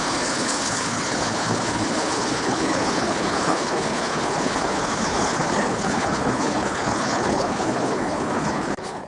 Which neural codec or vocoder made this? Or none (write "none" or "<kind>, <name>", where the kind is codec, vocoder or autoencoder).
codec, HILCodec